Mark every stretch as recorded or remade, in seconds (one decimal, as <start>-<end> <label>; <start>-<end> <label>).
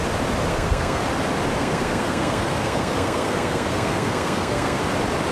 0.0-0.5 recorded; 0.5-1.0 remade; 1.0-1.6 recorded; 1.6-4.8 remade; 4.8-5.3 recorded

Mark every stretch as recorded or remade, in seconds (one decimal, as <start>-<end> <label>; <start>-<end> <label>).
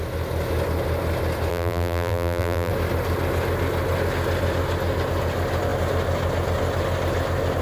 0.0-1.5 recorded; 1.5-2.7 remade; 2.7-7.6 recorded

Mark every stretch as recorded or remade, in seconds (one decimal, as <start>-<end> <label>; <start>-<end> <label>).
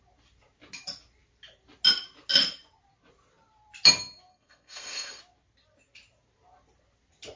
0.0-4.3 recorded; 4.3-5.2 remade; 5.2-7.4 recorded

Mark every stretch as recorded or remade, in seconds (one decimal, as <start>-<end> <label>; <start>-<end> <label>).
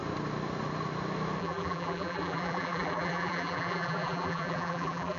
0.0-1.4 recorded; 1.4-5.2 remade